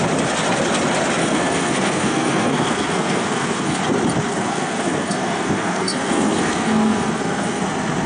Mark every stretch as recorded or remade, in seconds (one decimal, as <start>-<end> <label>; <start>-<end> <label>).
0.0-1.2 recorded; 1.2-3.8 remade; 3.8-4.3 recorded; 4.3-7.6 remade; 7.6-8.1 recorded